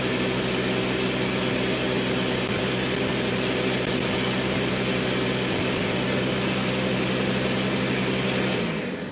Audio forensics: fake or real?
real